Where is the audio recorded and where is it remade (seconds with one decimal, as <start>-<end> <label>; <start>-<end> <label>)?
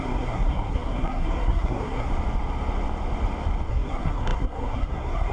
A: 0.0-2.1 remade; 2.1-3.7 recorded; 3.7-5.3 remade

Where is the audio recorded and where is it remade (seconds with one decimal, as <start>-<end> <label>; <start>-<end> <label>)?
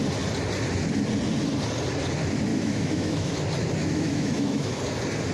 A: 0.0-2.5 recorded; 2.5-3.3 remade; 3.3-3.8 recorded; 3.8-4.8 remade; 4.8-5.3 recorded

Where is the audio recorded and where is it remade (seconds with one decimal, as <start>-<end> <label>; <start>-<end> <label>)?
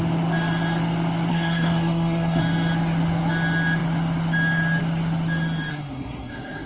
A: 0.0-1.3 recorded; 1.3-2.4 remade; 2.4-5.7 recorded; 5.7-6.7 remade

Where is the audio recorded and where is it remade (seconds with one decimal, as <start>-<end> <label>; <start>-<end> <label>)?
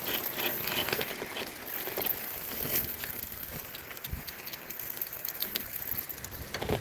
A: 0.0-0.5 recorded; 0.5-1.1 remade; 1.1-2.2 recorded; 2.2-5.8 remade; 5.8-6.8 recorded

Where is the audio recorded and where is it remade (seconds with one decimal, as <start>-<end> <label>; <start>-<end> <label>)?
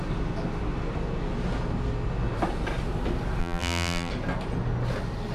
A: 0.0-3.4 recorded; 3.4-4.1 remade; 4.1-5.3 recorded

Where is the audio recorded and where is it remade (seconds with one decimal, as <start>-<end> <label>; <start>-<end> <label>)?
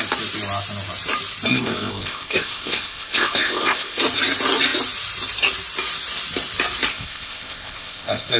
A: 0.0-1.5 recorded; 1.5-4.0 remade; 4.0-6.9 recorded; 6.9-8.4 remade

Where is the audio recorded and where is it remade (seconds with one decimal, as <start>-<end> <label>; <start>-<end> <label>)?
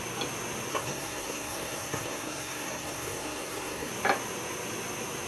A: 0.0-0.7 recorded; 0.7-3.9 remade; 3.9-5.3 recorded